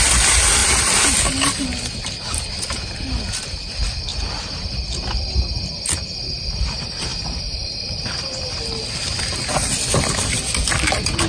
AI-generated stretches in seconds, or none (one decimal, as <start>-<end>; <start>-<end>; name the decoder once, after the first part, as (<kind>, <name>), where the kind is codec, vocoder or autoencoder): none